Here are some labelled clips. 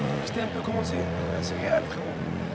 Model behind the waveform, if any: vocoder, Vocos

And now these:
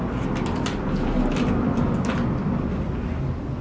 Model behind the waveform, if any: none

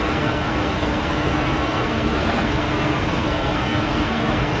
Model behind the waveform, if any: codec, SNAC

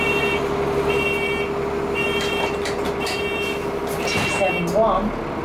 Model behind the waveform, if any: none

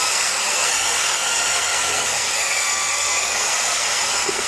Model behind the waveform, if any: codec, SNAC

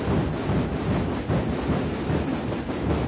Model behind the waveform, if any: none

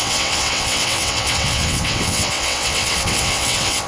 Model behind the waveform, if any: vocoder, WaveNeXt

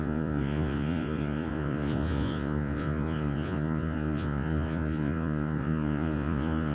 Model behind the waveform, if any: vocoder, Vocos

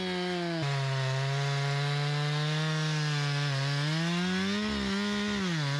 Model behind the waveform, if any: none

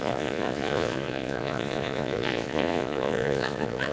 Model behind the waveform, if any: vocoder, Vocos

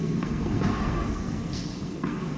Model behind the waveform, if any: codec, SNAC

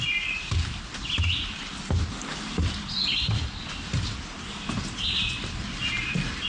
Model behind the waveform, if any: vocoder, BigVGAN v2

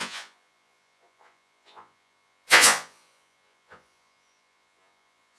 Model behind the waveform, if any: vocoder, Vocos